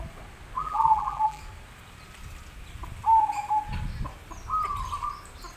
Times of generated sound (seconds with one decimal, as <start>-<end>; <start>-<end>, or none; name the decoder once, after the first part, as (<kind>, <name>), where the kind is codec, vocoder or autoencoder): 0.6-1.4 (vocoder, BigVGAN v2)